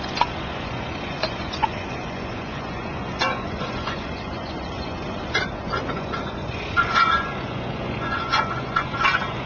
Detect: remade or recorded remade